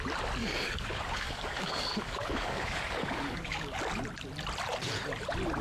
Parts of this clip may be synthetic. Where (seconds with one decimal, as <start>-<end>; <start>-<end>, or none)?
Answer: 0.4-3.8